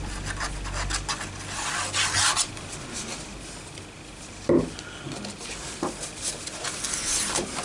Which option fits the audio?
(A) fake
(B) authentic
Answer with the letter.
B